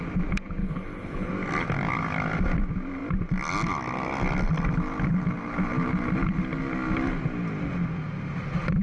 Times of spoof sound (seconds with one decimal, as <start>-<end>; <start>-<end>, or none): 0.6-1.3